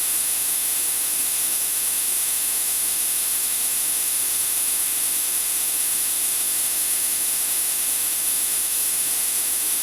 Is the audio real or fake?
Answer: fake